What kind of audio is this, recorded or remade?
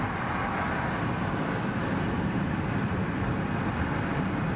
recorded